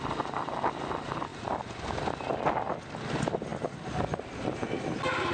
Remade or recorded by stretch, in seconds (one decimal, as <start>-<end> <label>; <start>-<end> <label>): 0.0-5.3 recorded